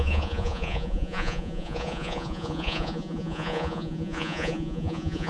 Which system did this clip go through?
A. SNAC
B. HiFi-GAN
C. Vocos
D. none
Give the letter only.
C